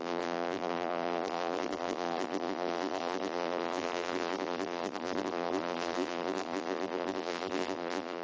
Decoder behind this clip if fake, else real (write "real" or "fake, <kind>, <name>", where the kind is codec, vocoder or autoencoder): fake, vocoder, BigVGAN v2